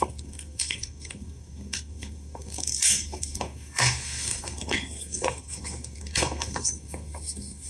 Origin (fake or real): fake